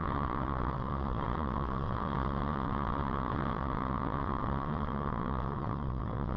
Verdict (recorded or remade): remade